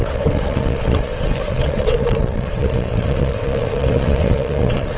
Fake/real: fake